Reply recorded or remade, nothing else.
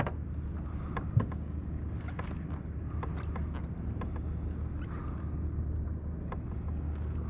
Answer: recorded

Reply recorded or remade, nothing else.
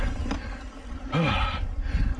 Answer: remade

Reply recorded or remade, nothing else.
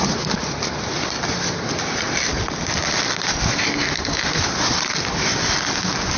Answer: recorded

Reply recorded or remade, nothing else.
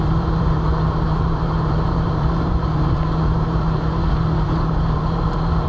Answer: remade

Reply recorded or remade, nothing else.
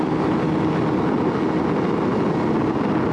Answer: recorded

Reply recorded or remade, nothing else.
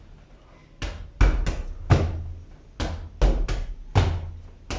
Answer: recorded